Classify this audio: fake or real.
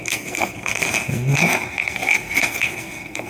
fake